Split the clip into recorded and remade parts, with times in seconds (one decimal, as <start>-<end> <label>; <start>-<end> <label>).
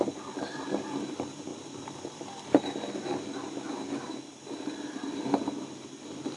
0.0-6.4 recorded